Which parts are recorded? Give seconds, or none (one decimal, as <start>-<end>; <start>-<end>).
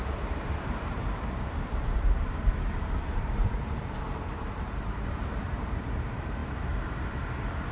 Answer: none